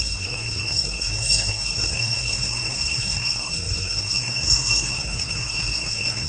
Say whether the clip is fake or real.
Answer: fake